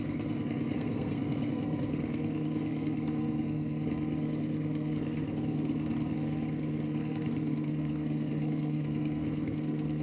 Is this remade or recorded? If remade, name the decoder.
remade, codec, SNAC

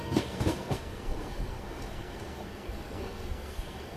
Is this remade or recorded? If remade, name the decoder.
remade, codec, SNAC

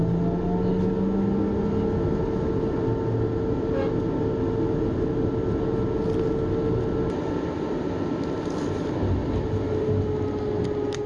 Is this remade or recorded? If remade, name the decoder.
recorded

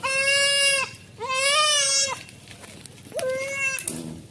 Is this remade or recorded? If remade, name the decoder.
recorded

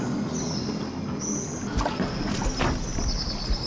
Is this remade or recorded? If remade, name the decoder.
recorded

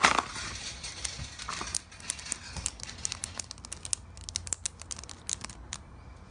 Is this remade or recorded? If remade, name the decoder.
recorded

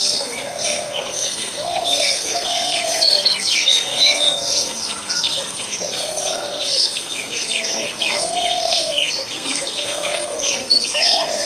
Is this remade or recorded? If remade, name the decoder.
remade, codec, SNAC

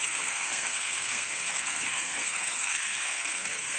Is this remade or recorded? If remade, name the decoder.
remade, codec, SNAC